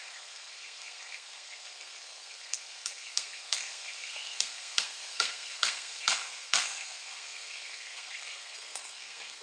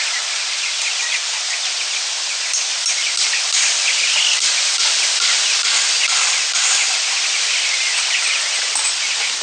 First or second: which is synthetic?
first